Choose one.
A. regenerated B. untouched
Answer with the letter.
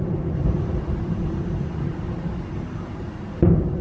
B